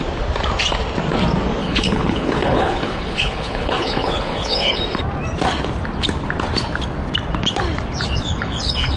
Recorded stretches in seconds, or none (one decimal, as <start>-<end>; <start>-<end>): 0.0-1.6; 4.8-8.2